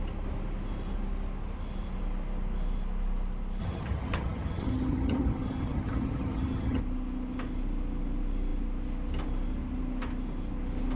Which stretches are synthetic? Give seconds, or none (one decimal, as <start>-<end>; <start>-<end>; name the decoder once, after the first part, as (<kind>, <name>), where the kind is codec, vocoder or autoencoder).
3.6-6.8 (vocoder, HiFi-GAN)